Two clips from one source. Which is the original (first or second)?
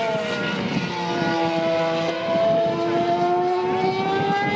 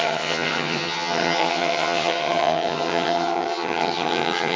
first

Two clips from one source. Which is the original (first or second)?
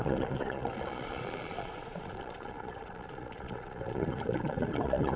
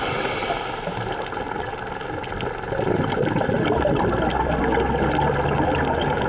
second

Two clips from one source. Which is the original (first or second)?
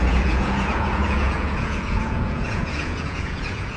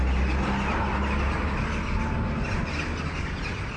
second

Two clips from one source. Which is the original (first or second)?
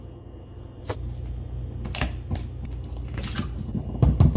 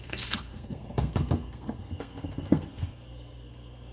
first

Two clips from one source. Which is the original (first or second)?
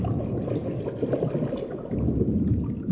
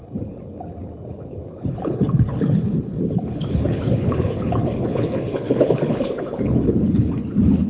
first